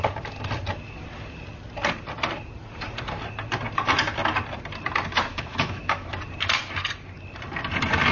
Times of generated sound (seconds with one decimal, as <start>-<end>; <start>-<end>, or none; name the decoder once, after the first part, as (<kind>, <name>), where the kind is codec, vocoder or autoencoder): 5.3-6.1 (autoencoder, DAC-VAE)